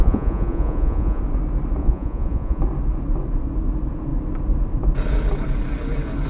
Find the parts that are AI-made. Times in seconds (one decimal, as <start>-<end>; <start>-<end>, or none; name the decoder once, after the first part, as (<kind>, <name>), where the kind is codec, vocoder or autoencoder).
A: 0.0-1.2 (vocoder, Vocos); 1.8-2.6